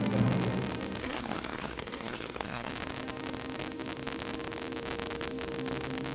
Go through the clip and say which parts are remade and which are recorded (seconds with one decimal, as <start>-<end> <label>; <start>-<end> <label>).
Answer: 0.0-1.0 recorded; 1.0-2.7 remade; 2.7-6.1 recorded